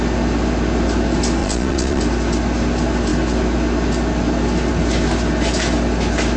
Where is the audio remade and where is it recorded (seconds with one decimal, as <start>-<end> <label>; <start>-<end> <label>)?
0.0-1.4 recorded; 1.4-2.0 remade; 2.0-6.4 recorded